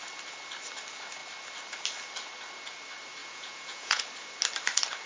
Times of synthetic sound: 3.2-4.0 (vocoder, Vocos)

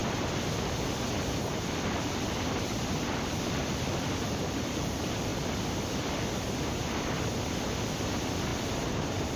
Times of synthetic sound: 0.0-5.3 (vocoder, BigVGAN v2); 6.1-8.5

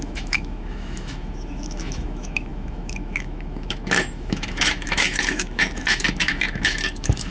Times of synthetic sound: 0.0-7.3 (autoencoder, DAC-VAE)

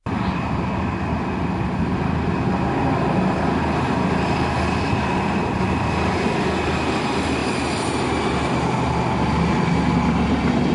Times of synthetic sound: none

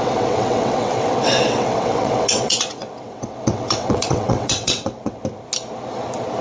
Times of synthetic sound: 0.0-5.2 (vocoder, WaveNeXt)